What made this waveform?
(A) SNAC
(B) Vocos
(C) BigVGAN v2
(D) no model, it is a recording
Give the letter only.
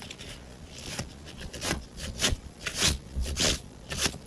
B